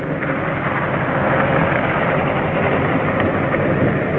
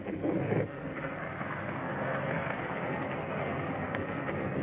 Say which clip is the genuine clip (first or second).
first